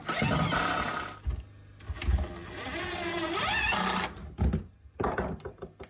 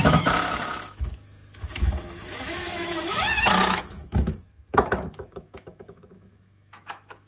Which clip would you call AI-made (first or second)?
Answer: second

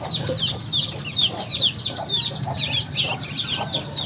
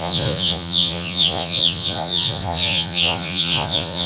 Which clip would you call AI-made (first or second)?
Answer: second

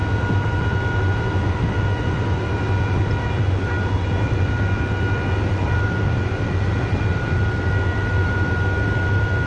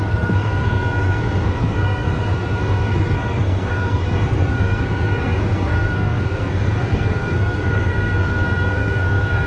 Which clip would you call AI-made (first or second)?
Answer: second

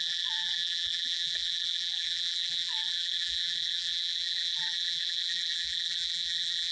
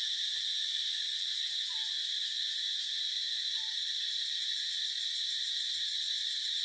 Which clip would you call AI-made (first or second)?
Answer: first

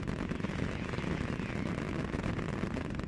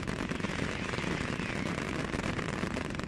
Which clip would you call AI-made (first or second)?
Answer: second